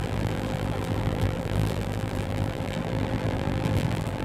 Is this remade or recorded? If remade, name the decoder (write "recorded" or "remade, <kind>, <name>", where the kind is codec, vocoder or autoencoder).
remade, vocoder, BigVGAN v2